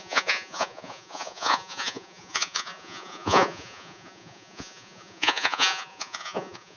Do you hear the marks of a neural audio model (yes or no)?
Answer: yes